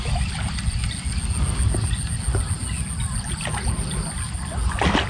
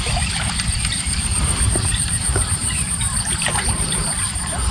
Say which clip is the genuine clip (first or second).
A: first